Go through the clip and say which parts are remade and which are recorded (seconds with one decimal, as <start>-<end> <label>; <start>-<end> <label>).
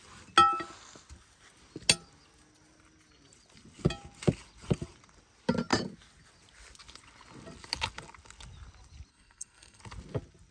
0.0-9.1 recorded; 9.1-9.8 remade; 9.8-10.5 recorded